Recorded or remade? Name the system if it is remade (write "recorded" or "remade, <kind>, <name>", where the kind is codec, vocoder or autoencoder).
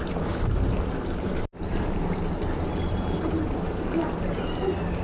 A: remade, vocoder, BigVGAN v2